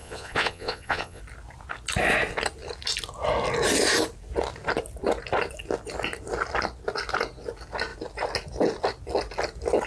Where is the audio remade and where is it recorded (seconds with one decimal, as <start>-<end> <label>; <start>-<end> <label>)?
0.0-1.2 remade; 1.2-9.9 recorded